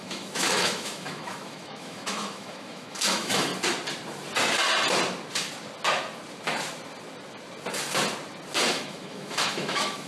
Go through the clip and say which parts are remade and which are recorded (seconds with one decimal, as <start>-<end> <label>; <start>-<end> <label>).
0.0-3.5 remade; 3.5-8.7 recorded; 8.7-10.1 remade